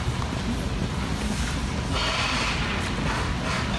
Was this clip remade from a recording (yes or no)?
no